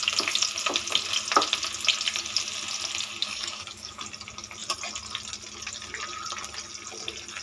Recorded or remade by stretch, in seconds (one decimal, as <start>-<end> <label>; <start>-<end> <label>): 0.0-3.2 recorded; 3.2-4.0 remade; 4.0-7.4 recorded